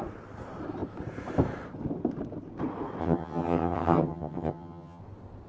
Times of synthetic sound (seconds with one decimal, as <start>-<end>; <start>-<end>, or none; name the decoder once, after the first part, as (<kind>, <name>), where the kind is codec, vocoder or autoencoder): 3.0-5.0 (vocoder, HiFi-GAN)